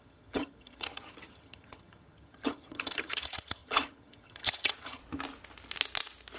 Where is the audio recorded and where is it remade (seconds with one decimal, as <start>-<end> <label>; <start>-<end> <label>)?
0.0-5.0 remade; 5.0-6.4 recorded